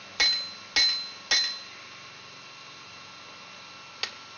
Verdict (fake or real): real